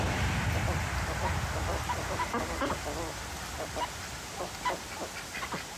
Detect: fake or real real